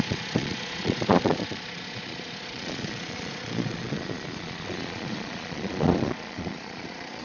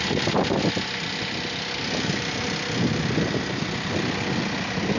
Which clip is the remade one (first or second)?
first